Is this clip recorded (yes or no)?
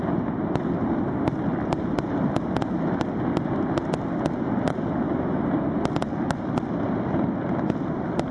yes